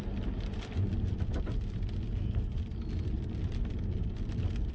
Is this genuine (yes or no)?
yes